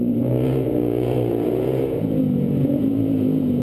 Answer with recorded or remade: remade